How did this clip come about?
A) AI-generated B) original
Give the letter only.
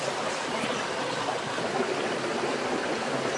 B